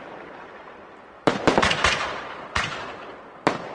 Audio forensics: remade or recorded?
remade